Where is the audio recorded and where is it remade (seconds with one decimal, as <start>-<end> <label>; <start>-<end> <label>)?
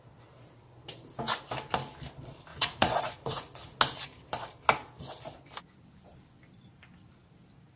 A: 0.0-2.5 recorded; 2.5-3.8 remade; 3.8-7.8 recorded